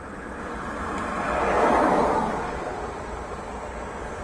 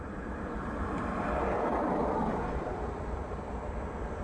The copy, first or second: second